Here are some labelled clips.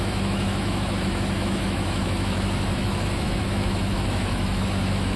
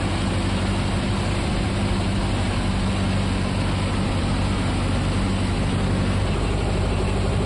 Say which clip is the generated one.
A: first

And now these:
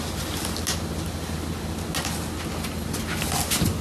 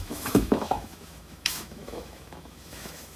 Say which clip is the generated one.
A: second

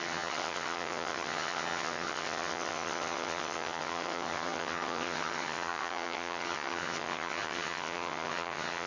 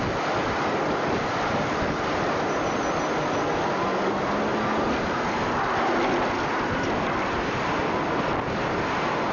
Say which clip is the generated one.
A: first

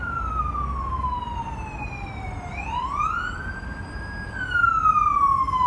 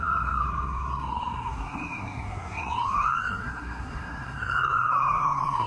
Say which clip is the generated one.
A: second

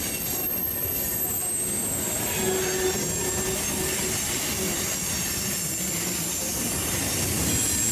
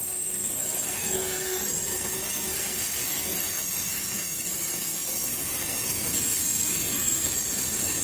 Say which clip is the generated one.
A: second